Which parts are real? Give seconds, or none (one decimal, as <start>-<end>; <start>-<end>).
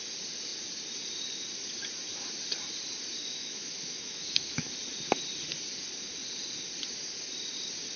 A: 0.0-3.2; 4.7-8.0